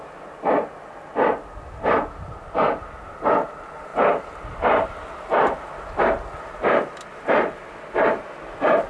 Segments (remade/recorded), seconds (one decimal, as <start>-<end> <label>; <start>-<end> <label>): 0.0-8.9 recorded